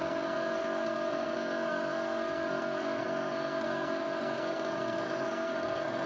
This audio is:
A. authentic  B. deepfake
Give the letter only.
B